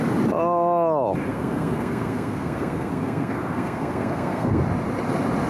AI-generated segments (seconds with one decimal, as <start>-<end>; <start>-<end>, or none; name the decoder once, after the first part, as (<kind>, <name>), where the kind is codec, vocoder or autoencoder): 1.3-4.6 (codec, SNAC)